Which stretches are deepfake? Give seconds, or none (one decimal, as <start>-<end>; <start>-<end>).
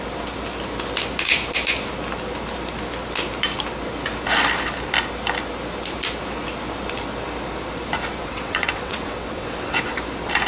8.2-9.9